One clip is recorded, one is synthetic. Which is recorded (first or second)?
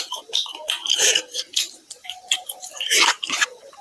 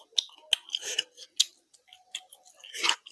second